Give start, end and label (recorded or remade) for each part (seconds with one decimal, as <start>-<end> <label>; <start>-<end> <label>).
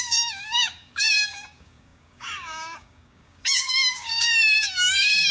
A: 0.0-5.3 remade